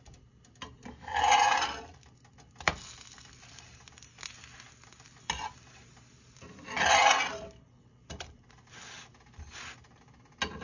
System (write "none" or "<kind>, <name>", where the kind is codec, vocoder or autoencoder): none